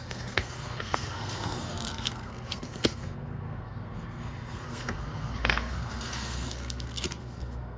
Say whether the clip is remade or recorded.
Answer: remade